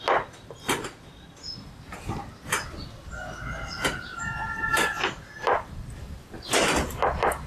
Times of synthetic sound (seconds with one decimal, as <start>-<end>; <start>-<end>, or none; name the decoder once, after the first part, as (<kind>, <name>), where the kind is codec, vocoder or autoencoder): none